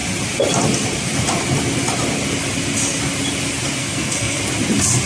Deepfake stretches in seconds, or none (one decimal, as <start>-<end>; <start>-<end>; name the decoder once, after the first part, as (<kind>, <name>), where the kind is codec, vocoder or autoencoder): 3.8-4.4 (codec, SNAC)